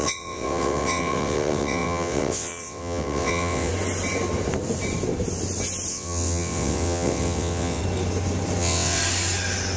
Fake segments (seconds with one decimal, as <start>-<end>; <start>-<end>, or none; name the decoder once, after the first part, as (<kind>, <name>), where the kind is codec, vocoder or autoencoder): 0.0-3.7 (vocoder, WaveNeXt); 5.9-7.8; 8.6-9.0